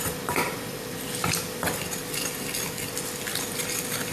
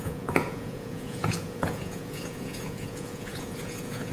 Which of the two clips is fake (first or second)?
second